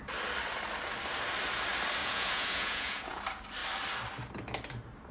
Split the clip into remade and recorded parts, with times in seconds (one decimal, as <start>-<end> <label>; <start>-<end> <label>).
0.0-2.0 recorded; 2.0-3.2 remade; 3.2-5.1 recorded